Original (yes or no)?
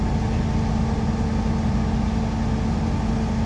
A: yes